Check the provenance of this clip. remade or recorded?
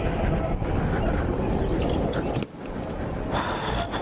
recorded